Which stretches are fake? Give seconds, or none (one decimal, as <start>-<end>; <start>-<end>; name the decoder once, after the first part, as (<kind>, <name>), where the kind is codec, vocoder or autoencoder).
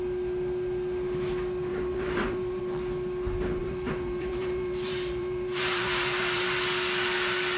1.7-2.6 (vocoder, BigVGAN v2); 3.6-6.4